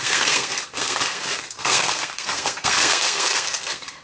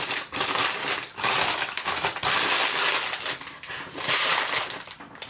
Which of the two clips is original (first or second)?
second